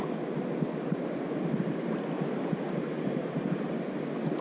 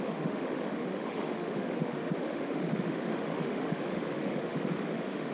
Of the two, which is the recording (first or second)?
first